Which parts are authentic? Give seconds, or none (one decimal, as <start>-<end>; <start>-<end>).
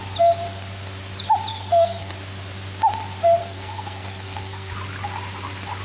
0.0-1.5; 2.1-3.4; 4.7-5.8